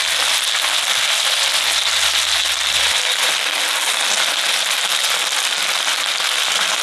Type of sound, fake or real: real